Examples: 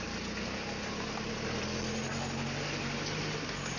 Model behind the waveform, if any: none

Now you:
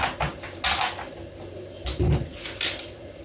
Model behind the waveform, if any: none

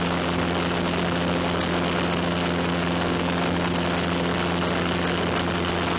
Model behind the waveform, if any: none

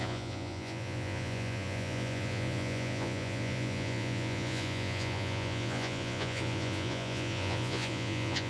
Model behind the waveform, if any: vocoder, Vocos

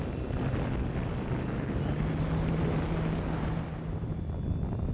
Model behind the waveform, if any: none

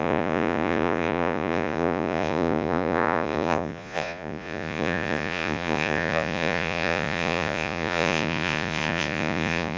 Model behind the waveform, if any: vocoder, Vocos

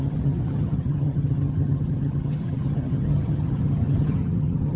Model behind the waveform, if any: vocoder, HiFi-GAN